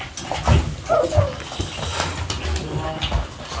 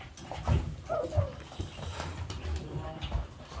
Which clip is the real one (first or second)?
first